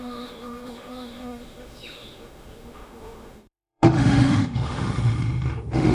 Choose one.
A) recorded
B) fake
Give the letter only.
B